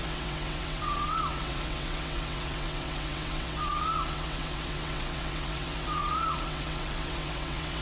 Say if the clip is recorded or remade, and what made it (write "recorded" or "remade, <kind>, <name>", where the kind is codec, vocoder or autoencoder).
remade, vocoder, WaveNeXt